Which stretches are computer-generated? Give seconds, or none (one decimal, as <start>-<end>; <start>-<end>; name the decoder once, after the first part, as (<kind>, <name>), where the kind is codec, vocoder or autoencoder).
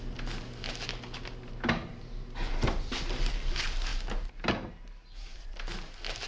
none